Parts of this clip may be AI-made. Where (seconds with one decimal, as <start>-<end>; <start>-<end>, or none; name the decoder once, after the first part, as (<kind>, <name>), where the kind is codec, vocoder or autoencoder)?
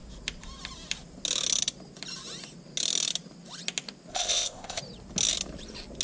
4.1-4.8 (codec, ZipCodec)